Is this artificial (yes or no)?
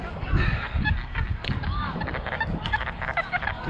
yes